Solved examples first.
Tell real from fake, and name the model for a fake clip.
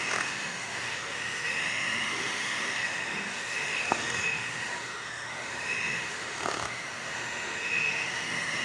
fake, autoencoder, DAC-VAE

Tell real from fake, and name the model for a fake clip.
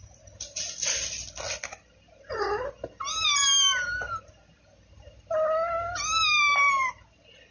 real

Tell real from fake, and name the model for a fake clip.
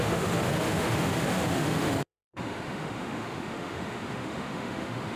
fake, autoencoder, DAC-VAE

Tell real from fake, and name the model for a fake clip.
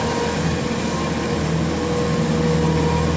real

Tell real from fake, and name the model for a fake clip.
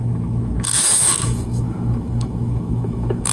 fake, autoencoder, DAC-VAE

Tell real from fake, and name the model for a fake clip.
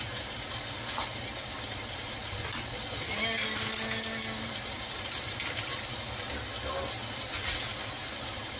real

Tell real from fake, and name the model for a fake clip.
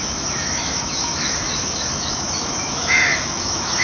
fake, autoencoder, DAC-VAE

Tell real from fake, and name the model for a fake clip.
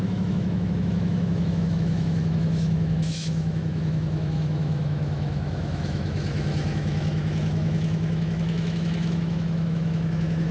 fake, autoencoder, DAC-VAE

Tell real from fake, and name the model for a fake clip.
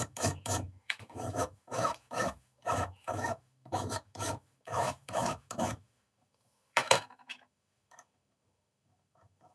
fake, autoencoder, DAC-VAE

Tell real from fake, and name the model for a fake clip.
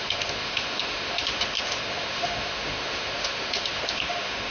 fake, autoencoder, DAC-VAE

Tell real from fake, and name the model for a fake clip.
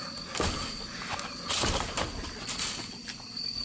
real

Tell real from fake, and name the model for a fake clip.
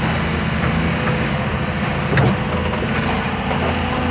real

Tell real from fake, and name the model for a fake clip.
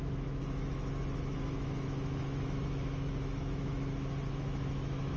fake, autoencoder, DAC-VAE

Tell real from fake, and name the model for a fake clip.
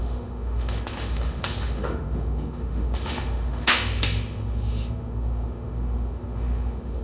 fake, autoencoder, DAC-VAE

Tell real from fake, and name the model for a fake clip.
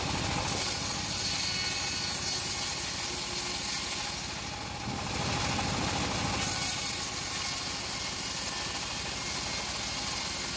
real